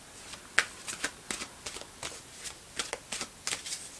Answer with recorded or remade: recorded